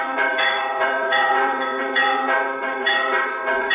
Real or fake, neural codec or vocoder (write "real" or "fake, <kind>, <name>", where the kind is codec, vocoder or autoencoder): fake, vocoder, WaveNeXt